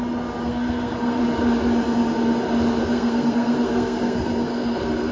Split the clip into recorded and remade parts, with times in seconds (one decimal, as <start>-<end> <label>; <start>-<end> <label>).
0.0-0.4 recorded; 0.4-1.2 remade; 1.2-2.8 recorded; 2.8-5.1 remade